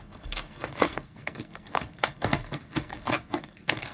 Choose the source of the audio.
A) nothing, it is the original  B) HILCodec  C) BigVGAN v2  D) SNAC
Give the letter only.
D